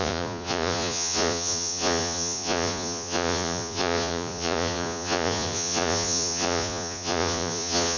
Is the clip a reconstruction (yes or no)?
yes